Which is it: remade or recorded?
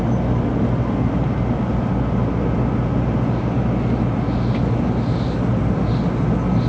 recorded